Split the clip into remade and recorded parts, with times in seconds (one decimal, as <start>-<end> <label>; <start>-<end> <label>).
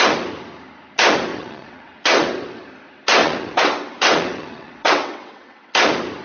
0.0-1.3 recorded; 1.3-2.6 remade; 2.6-3.2 recorded; 3.2-5.7 remade; 5.7-6.2 recorded